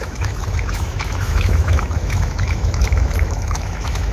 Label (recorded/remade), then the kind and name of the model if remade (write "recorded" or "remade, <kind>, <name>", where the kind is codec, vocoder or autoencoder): remade, autoencoder, DAC-VAE